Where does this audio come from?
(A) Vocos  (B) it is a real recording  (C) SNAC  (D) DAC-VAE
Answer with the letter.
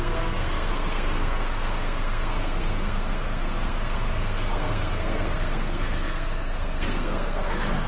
C